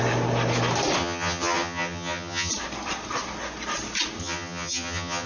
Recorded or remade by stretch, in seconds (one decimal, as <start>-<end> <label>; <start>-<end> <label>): 0.0-1.0 recorded; 1.0-2.5 remade; 2.5-4.2 recorded; 4.2-5.3 remade